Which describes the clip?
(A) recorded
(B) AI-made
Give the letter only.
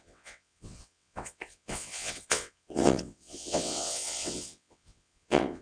B